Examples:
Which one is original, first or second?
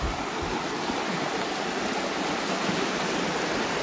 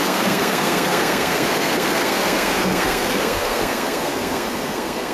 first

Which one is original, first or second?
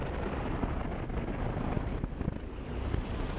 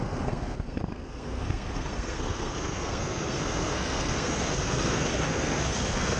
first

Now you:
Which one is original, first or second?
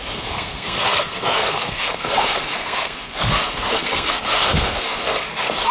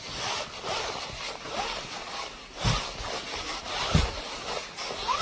second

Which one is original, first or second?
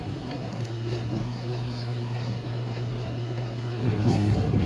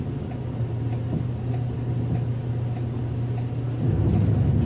second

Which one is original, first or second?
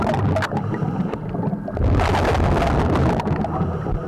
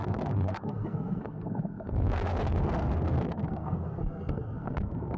first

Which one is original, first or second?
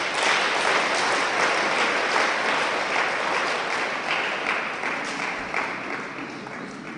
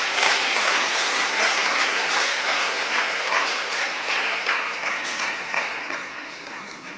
first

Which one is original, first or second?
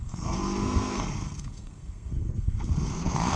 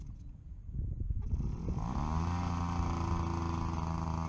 second